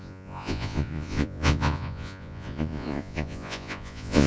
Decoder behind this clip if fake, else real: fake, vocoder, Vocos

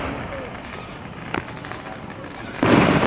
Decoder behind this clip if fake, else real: real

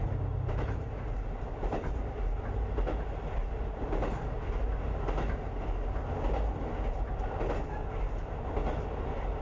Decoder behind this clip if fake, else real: real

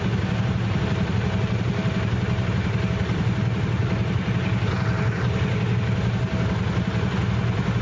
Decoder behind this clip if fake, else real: real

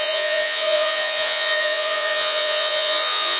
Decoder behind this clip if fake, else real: fake, vocoder, Vocos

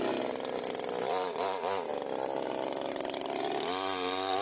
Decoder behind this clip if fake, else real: real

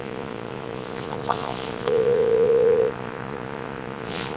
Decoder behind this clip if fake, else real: fake, vocoder, Vocos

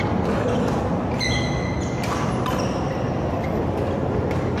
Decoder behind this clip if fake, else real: real